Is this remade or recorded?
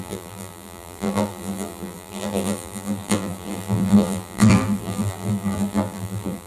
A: remade